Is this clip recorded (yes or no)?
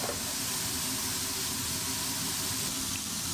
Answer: no